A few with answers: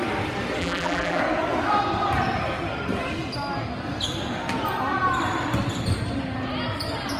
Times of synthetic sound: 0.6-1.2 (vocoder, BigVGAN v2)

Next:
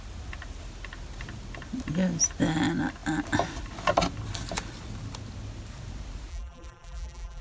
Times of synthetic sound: 6.3-7.4 (vocoder, BigVGAN v2)

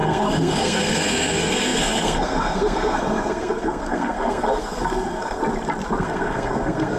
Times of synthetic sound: 0.0-5.4 (codec, SNAC); 6.0-7.0

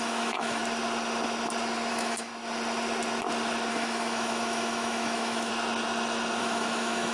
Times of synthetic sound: 0.0-0.6 (autoencoder, DAC-VAE); 1.9-2.3; 3.7-5.5; 6.4-7.1

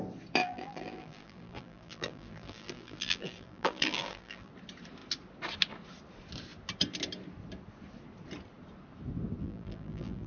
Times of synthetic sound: 0.4-4.5 (vocoder, BigVGAN v2); 9.4-10.3